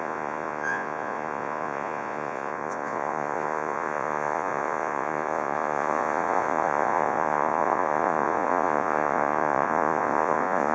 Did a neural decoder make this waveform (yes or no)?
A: yes